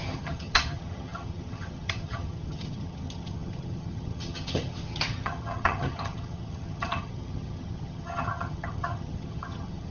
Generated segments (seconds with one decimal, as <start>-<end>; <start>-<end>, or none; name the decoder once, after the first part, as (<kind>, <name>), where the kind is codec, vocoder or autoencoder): 0.0-9.9 (vocoder, HiFi-GAN)